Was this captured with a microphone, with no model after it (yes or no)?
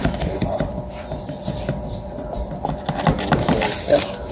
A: no